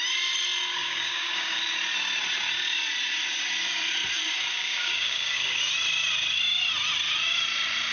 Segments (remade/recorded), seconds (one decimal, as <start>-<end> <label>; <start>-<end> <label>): 0.0-0.7 recorded; 0.7-1.6 remade; 1.6-4.5 recorded; 4.5-5.6 remade; 5.6-7.9 recorded